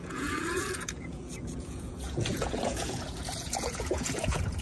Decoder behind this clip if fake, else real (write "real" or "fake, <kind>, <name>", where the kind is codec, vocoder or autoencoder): fake, vocoder, Vocos